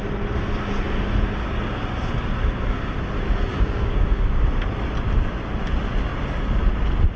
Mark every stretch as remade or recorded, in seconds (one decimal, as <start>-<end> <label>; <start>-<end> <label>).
0.0-3.5 recorded; 3.5-4.1 remade; 4.1-7.2 recorded